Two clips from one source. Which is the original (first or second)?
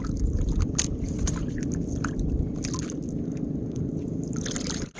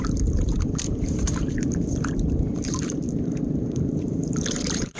first